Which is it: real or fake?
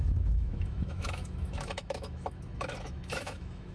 fake